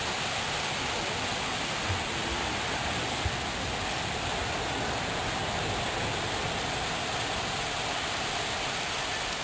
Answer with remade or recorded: recorded